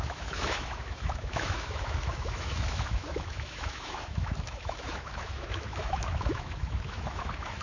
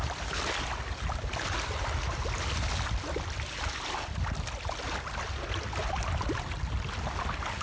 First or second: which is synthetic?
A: first